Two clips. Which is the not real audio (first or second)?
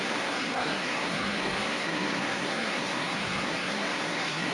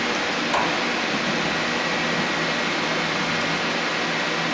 first